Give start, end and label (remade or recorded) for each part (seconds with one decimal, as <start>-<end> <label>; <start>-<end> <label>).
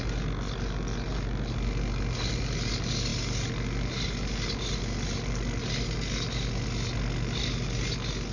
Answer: 0.0-8.3 recorded